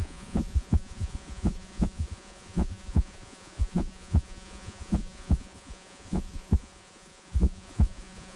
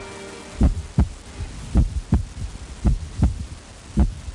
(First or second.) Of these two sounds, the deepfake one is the first